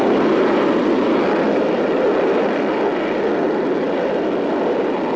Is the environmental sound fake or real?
real